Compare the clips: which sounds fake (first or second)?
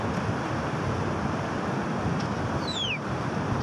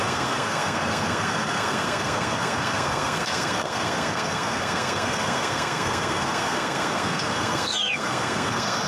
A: second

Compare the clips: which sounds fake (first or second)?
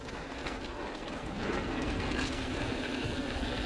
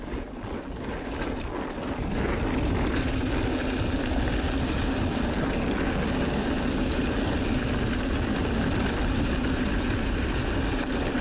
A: first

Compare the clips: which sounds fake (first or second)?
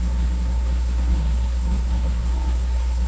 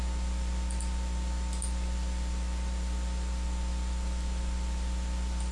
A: first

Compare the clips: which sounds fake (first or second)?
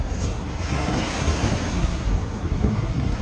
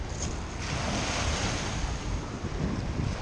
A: first